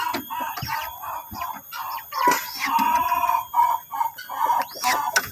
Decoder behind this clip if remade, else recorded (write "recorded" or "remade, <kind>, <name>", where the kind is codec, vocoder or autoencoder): recorded